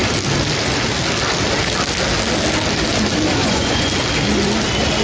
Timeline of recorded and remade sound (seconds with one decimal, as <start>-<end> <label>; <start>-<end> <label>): 0.0-3.4 recorded; 3.4-3.9 remade; 3.9-5.0 recorded